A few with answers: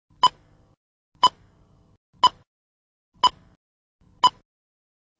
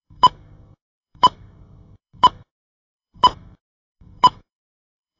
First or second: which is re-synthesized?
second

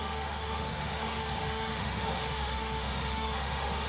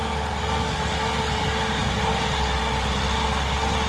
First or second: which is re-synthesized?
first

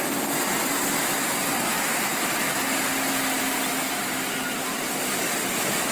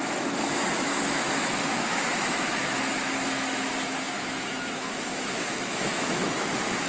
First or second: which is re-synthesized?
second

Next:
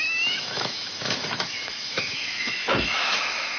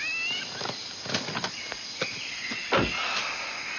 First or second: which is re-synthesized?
first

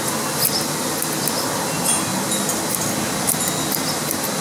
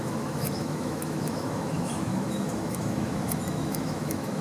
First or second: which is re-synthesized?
second